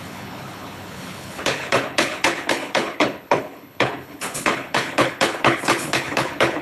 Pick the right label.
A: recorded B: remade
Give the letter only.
B